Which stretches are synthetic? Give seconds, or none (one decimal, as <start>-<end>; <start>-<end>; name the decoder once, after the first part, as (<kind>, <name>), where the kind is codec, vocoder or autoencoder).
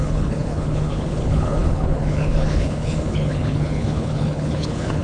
0.0-5.0 (codec, HILCodec)